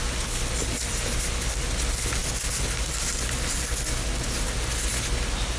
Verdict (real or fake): real